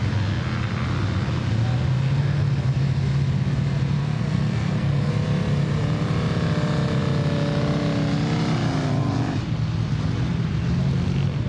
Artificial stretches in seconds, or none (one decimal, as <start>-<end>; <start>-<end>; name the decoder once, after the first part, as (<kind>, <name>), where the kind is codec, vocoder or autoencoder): 4.0-5.1 (codec, SNAC)